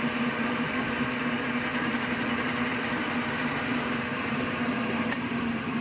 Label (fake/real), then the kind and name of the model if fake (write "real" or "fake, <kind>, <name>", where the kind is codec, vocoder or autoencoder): fake, vocoder, BigVGAN v2